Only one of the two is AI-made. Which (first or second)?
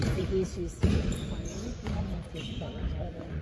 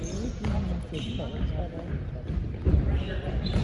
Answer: first